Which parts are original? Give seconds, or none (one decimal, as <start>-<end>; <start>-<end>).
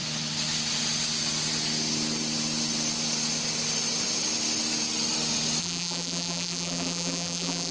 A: 0.0-5.6